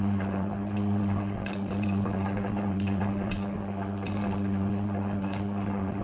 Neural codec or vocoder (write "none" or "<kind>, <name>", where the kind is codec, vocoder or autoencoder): vocoder, WaveNeXt